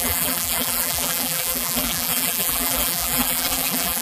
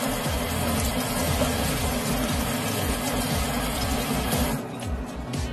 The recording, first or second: second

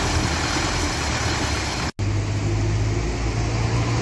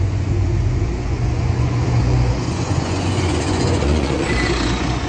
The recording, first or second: first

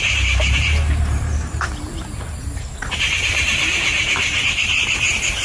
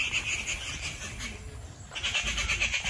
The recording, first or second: second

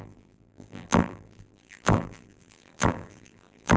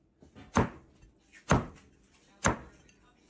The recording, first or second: second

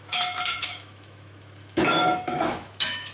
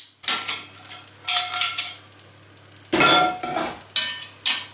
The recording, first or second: second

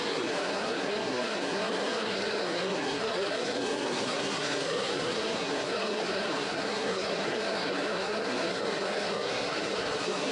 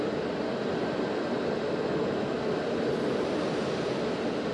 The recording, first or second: second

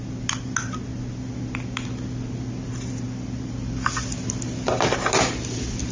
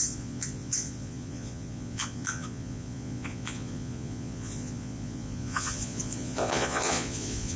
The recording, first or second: first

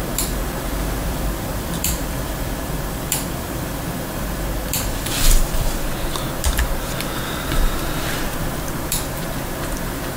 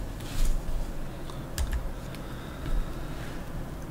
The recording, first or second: second